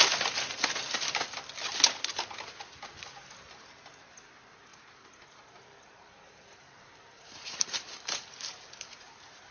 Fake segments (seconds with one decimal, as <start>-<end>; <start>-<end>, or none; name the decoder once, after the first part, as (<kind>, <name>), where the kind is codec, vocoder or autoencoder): 4.7-9.5 (vocoder, BigVGAN v2)